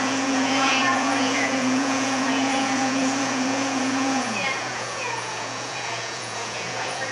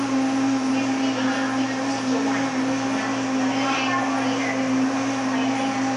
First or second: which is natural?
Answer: second